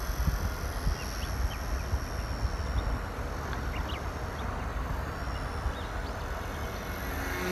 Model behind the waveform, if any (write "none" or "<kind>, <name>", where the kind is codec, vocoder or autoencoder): none